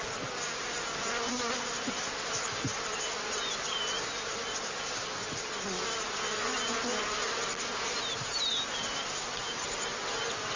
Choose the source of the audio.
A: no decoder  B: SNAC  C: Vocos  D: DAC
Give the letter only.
A